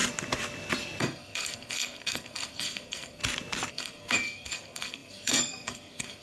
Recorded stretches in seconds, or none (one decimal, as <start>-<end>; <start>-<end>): 0.0-1.0; 3.2-3.7